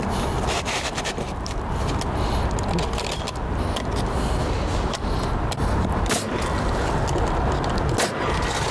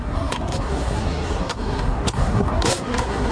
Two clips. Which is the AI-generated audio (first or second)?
second